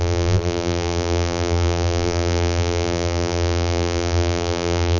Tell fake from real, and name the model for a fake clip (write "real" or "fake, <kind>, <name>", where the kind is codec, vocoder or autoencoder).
fake, vocoder, BigVGAN v2